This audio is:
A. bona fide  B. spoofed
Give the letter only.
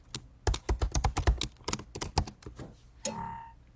A